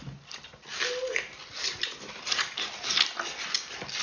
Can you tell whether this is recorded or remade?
recorded